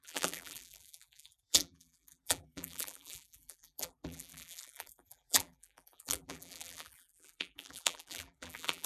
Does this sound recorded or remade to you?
remade